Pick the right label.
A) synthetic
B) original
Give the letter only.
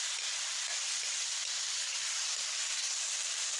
B